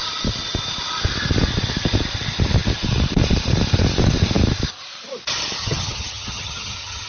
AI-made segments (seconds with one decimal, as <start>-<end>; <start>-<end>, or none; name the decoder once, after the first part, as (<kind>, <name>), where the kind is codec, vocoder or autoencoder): 5.6-7.1 (vocoder, HiFi-GAN)